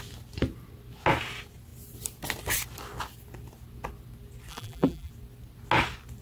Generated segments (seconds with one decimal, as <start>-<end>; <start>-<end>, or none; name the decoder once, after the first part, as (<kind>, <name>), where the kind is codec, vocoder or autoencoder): 4.5-5.1 (vocoder, BigVGAN v2)